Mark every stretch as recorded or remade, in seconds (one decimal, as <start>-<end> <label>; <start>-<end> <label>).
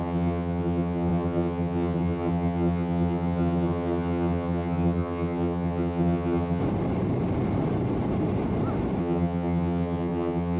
0.0-6.6 remade; 6.6-9.0 recorded; 9.0-10.6 remade